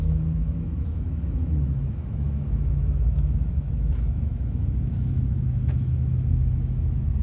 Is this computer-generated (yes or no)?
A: yes